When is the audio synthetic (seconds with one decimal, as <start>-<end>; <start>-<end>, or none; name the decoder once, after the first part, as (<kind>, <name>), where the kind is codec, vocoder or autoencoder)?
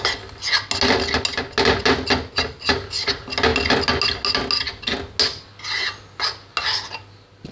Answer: none